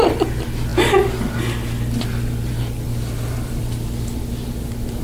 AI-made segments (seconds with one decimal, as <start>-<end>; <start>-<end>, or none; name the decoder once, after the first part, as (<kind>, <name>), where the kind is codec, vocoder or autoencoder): none